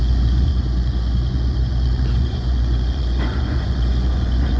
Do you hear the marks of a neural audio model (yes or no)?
yes